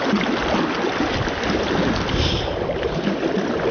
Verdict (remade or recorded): recorded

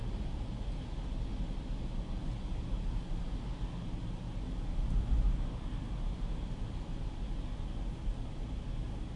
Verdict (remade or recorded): recorded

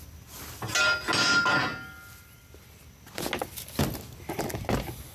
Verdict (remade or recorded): recorded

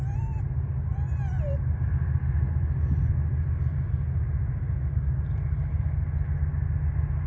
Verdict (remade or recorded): recorded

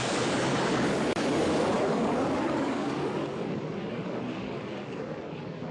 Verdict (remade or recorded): remade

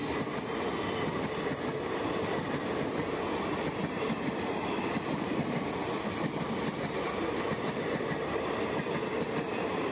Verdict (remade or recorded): recorded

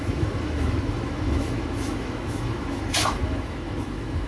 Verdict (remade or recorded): remade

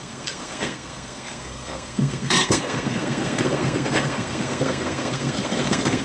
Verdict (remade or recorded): remade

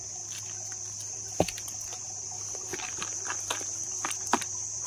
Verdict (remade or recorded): remade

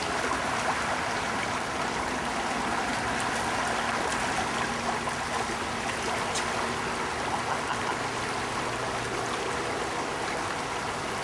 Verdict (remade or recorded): recorded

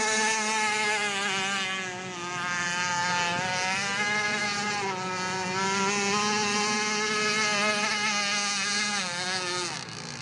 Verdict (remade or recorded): recorded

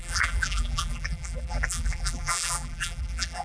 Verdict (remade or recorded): remade